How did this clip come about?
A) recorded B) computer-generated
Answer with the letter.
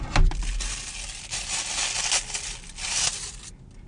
A